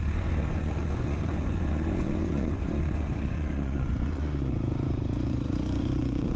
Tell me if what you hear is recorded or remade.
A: remade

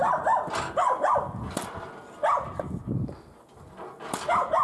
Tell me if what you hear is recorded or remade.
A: recorded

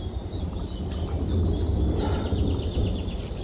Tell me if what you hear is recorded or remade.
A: recorded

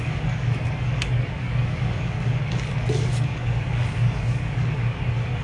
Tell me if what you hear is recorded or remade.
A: remade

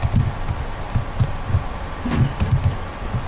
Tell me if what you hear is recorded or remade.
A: recorded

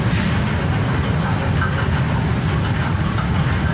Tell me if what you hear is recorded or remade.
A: recorded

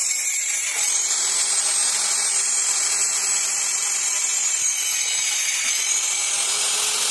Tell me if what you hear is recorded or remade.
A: recorded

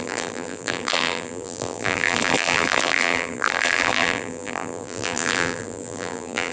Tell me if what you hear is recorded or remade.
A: remade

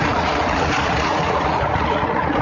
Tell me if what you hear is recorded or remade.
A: remade